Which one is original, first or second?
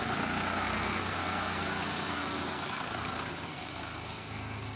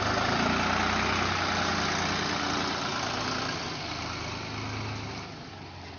second